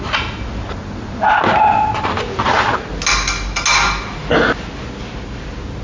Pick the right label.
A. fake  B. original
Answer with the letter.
B